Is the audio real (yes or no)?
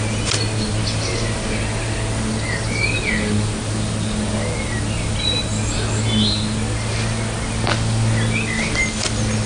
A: yes